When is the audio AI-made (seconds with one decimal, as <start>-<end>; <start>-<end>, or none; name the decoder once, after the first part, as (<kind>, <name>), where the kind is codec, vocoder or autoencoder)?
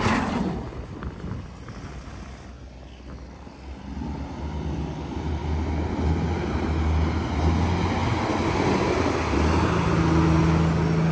none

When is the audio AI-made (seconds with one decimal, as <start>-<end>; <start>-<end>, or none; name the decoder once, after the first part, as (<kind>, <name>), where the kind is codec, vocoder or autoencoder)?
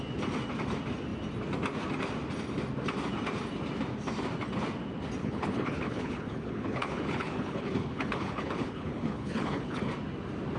5.2-9.8 (codec, HILCodec)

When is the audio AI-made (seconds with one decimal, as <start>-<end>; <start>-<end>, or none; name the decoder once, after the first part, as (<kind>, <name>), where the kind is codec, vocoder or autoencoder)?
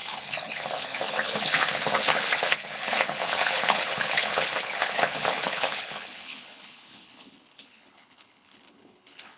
0.0-9.4 (codec, HILCodec)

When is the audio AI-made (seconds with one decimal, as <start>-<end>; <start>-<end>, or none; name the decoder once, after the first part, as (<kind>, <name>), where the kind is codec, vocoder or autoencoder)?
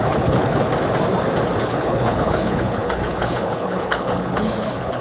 0.0-0.7 (codec, HILCodec); 1.6-5.0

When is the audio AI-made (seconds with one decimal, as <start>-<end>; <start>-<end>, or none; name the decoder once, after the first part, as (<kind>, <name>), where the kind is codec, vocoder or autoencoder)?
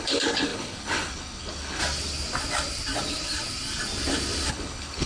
0.0-1.8 (codec, HILCodec); 4.5-5.1